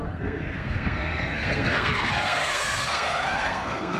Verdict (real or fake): fake